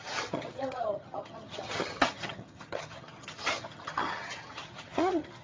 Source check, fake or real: fake